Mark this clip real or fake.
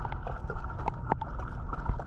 real